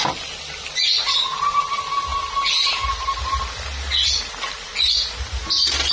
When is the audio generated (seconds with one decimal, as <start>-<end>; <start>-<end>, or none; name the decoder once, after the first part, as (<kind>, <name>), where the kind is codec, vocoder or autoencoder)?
none